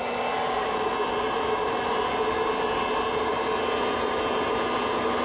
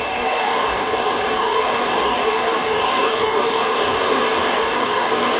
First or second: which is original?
first